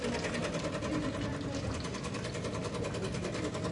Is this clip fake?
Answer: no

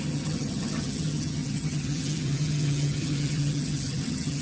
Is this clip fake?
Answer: yes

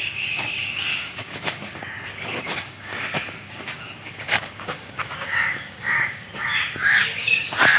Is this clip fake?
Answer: yes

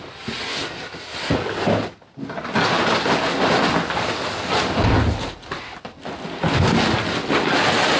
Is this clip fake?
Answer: no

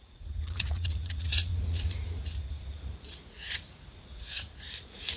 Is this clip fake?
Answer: yes